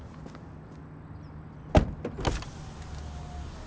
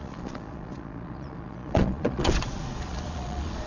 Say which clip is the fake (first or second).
second